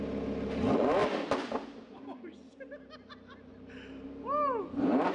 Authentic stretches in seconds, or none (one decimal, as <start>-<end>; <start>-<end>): 0.0-5.1

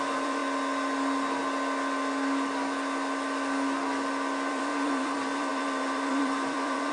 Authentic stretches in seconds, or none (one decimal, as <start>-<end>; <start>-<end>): 0.4-4.5

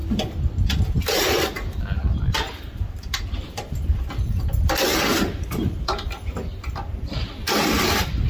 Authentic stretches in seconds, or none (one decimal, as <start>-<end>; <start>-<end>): 0.0-1.1

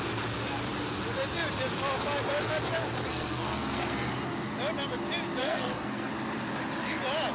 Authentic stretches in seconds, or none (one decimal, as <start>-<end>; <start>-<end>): 0.0-3.1; 4.1-5.4; 6.1-7.3

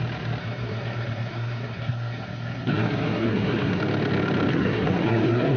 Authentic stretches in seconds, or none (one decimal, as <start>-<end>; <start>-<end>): 0.0-0.4; 3.8-4.5

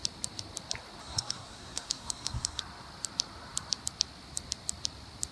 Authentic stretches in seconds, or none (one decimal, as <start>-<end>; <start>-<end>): 0.0-1.0; 2.6-5.3

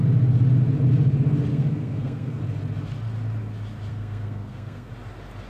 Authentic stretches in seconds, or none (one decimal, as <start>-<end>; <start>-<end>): 0.0-1.5; 2.4-3.9; 4.9-5.5

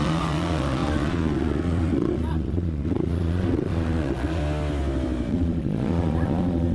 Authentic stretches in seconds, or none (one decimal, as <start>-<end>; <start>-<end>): 4.4-5.3